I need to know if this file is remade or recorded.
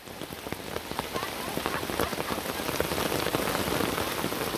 recorded